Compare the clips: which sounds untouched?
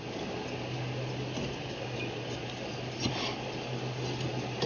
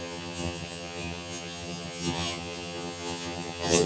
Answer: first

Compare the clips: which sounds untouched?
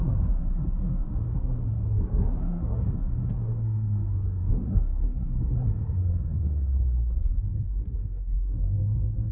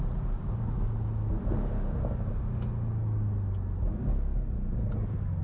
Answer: second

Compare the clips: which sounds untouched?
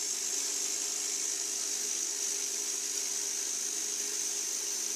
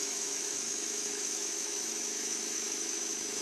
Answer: first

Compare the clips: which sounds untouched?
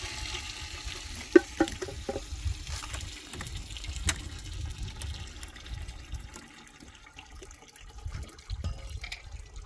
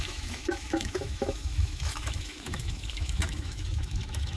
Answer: first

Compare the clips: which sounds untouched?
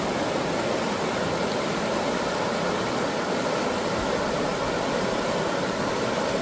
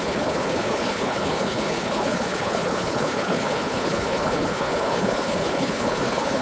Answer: first